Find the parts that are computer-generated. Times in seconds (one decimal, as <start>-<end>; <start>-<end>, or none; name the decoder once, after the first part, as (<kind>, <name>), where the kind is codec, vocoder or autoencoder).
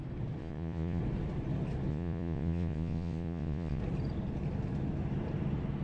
0.4-1.0 (vocoder, Vocos); 1.9-3.8